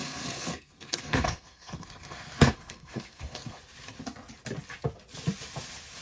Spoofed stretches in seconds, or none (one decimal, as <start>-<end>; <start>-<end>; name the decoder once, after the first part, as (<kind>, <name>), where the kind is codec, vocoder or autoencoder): 0.0-3.6 (codec, SNAC)